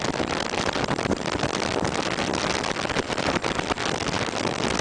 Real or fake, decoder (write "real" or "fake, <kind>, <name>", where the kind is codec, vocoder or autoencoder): real